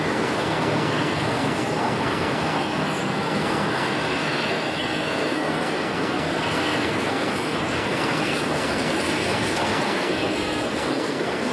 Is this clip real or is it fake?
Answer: fake